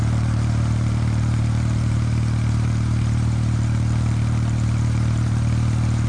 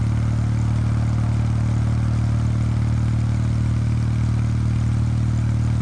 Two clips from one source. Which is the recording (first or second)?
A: second